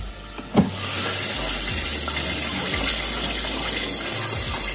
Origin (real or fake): real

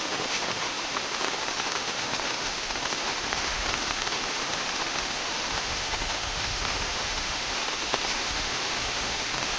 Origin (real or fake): fake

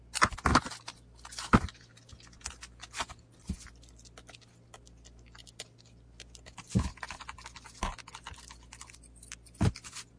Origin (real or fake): real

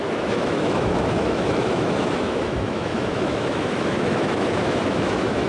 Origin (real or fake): fake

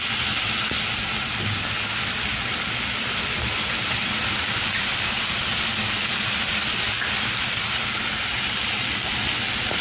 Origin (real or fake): real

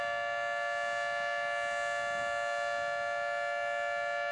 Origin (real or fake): real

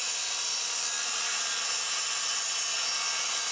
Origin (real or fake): real